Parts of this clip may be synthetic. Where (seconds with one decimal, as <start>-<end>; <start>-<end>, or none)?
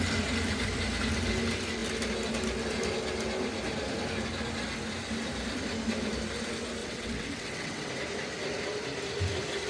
6.8-7.9